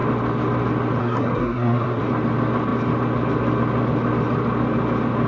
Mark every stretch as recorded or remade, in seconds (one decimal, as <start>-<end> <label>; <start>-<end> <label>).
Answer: 0.0-1.0 recorded; 1.0-2.0 remade; 2.0-5.3 recorded